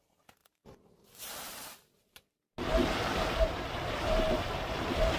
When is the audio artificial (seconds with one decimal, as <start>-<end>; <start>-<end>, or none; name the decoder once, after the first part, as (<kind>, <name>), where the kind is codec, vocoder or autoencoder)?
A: 0.4-1.6 (vocoder, BigVGAN v2); 2.0-5.2